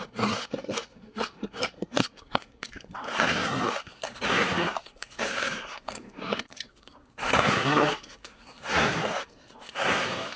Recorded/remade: remade